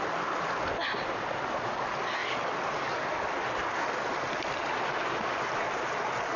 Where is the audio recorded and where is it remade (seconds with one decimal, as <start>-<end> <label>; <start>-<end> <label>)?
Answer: 0.0-6.4 recorded